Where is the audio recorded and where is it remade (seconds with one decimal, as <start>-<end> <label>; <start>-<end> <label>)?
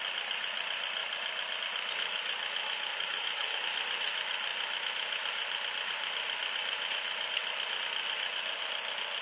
0.0-2.9 recorded; 2.9-3.6 remade; 3.6-9.2 recorded